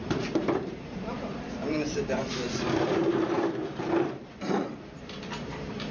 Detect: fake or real fake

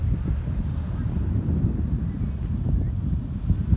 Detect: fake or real real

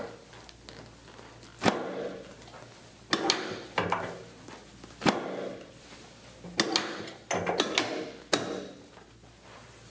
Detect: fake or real real